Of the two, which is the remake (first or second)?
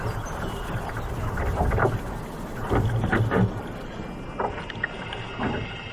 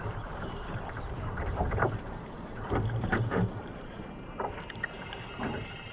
second